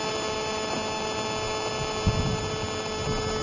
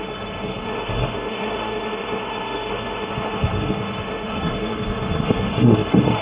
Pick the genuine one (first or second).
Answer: first